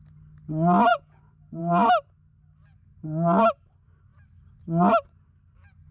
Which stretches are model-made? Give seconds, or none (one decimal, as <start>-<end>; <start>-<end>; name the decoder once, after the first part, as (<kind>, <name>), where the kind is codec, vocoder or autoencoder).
0.9-1.6 (vocoder, Vocos)